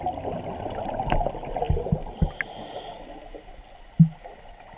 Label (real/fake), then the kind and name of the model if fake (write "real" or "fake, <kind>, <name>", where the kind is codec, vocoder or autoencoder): real